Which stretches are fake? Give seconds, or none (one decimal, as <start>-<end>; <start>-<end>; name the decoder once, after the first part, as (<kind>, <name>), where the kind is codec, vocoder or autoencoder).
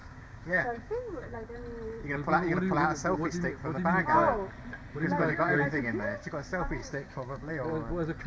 0.0-1.5 (codec, DAC); 6.8-7.5